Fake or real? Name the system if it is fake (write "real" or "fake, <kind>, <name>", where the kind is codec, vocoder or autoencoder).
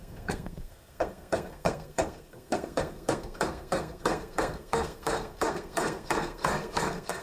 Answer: fake, codec, SNAC